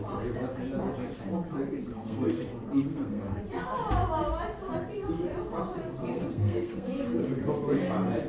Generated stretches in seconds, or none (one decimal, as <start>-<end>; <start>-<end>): 1.9-3.4; 6.0-7.3